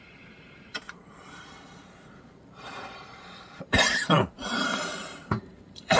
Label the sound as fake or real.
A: fake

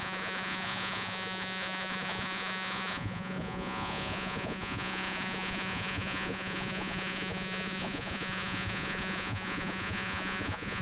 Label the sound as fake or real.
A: fake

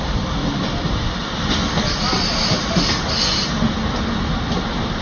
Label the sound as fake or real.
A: real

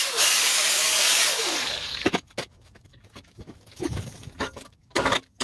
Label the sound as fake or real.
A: fake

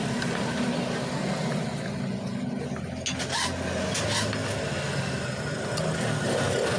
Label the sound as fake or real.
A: real